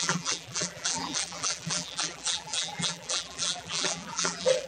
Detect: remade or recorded remade